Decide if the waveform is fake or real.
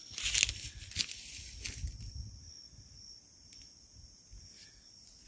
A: real